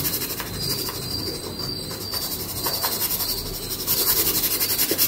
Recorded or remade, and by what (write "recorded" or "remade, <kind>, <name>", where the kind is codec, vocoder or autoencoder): recorded